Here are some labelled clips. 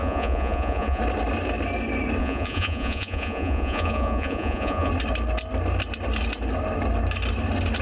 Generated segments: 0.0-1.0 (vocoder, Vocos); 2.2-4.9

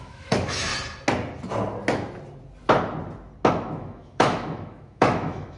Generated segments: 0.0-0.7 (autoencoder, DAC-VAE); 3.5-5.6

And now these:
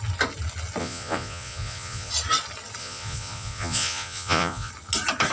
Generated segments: 0.8-2.1 (vocoder, Vocos); 2.8-4.7

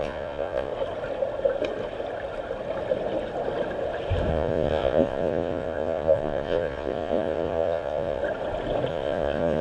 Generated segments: 0.0-0.7 (vocoder, Vocos); 4.3-8.2; 8.9-9.6

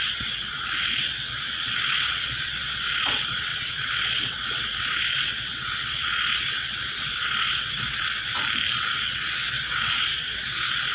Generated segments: 0.0-8.3 (vocoder, WaveNeXt); 9.0-10.9

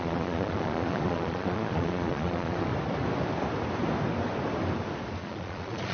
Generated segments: 0.0-2.7 (vocoder, Vocos); 5.2-5.9

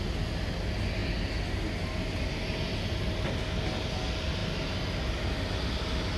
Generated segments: none